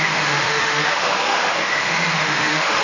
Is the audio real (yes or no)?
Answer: no